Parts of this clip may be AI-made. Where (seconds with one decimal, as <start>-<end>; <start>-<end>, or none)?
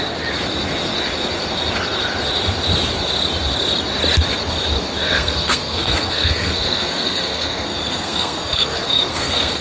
5.0-9.6